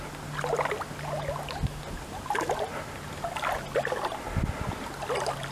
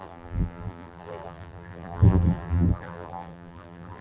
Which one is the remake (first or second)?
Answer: second